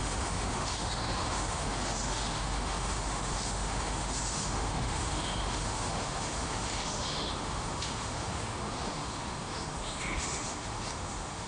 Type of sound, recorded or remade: remade